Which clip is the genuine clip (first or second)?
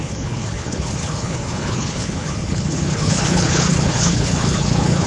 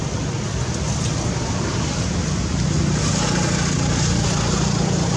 second